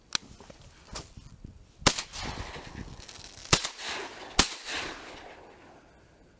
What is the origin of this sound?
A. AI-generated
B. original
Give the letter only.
B